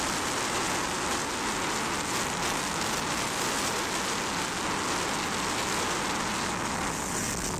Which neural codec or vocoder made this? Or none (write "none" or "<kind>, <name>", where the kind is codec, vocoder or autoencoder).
none